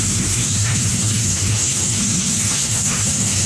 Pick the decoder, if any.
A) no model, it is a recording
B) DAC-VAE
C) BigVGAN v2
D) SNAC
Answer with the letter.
D